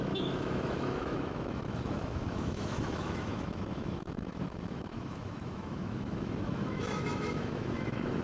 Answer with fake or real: fake